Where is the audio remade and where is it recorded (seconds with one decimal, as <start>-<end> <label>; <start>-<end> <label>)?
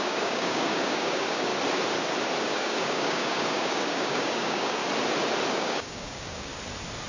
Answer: 0.0-1.5 remade; 1.5-2.4 recorded; 2.4-4.8 remade; 4.8-5.5 recorded; 5.5-6.5 remade; 6.5-7.1 recorded